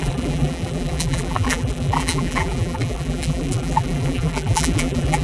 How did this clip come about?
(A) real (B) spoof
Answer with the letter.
B